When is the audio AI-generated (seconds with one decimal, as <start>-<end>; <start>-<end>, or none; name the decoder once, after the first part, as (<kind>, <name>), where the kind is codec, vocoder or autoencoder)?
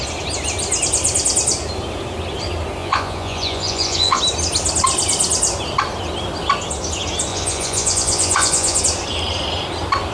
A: 2.8-4.2 (vocoder, Vocos); 7.3-8.8